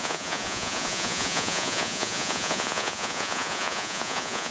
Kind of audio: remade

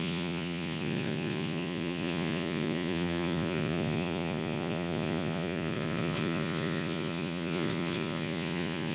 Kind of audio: remade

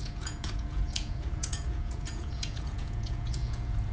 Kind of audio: remade